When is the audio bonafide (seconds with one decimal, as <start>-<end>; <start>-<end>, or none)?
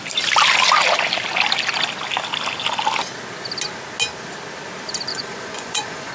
0.0-5.1